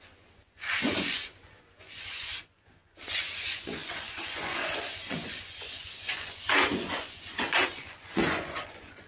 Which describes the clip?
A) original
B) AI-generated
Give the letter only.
B